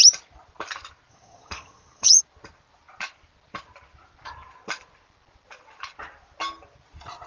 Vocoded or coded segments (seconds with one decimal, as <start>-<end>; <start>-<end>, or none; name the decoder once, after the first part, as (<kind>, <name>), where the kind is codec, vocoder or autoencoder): 1.1-2.2 (vocoder, HiFi-GAN)